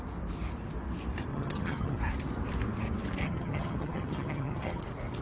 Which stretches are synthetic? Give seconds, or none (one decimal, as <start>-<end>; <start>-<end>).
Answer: 1.3-2.0; 3.2-4.8